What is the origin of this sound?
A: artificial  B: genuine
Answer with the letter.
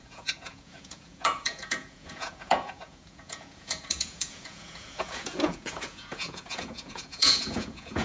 A